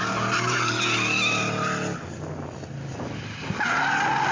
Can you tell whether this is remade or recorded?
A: recorded